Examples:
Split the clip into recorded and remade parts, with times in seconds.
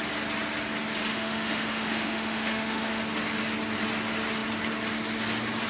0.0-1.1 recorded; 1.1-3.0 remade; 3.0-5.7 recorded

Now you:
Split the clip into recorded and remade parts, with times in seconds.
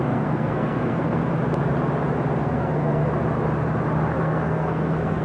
0.0-1.2 remade; 1.2-2.4 recorded; 2.4-3.0 remade; 3.0-4.2 recorded; 4.2-5.2 remade